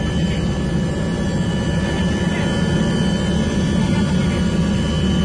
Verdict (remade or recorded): recorded